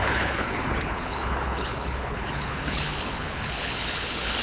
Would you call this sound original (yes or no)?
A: no